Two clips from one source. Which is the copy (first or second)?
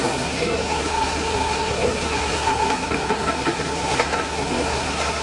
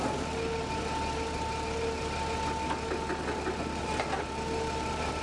first